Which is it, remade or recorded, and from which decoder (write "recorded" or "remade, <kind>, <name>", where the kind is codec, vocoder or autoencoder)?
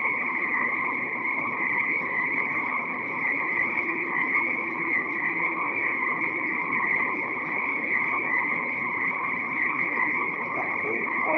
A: remade, codec, HILCodec